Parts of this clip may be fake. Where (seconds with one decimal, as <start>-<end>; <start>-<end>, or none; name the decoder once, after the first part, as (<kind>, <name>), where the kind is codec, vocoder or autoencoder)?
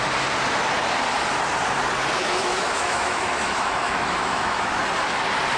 2.2-4.8 (autoencoder, DAC-VAE)